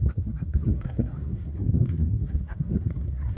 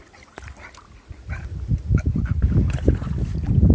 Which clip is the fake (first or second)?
first